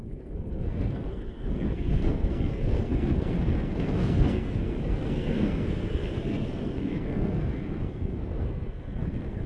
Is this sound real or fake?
fake